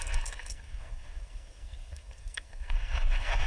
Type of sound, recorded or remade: remade